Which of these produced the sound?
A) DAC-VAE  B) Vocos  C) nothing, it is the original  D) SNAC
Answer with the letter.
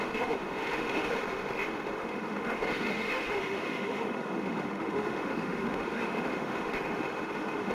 A